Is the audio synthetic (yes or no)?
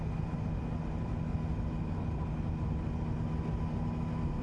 no